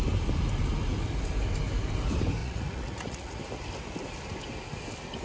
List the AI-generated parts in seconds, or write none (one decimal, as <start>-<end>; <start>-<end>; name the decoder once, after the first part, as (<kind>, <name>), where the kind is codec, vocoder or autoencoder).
2.4-3.4 (vocoder, Vocos)